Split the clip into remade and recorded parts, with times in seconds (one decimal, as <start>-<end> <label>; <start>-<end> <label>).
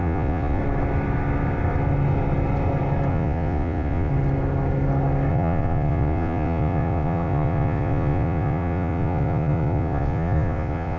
0.0-0.6 remade; 0.6-3.1 recorded; 3.1-4.1 remade; 4.1-5.3 recorded; 5.3-11.0 remade